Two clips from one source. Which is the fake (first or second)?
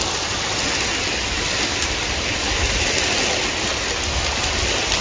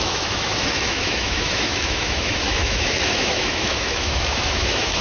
second